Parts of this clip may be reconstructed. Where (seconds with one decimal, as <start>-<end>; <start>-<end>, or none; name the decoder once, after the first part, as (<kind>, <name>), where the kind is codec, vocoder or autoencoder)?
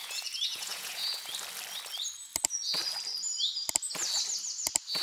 0.0-1.3 (vocoder, Vocos)